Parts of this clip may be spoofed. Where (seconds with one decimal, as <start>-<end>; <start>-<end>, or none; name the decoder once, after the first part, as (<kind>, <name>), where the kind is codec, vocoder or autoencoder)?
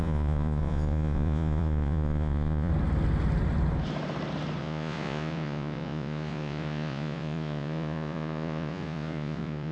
0.0-2.7 (vocoder, Vocos); 4.6-9.7